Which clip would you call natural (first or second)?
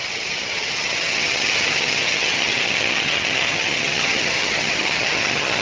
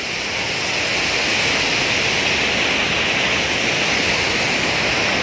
second